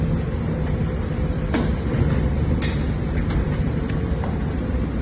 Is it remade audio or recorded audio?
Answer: recorded